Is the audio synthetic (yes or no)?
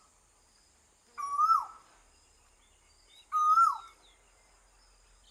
no